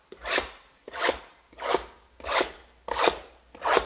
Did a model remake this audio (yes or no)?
no